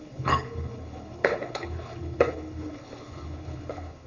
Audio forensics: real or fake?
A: fake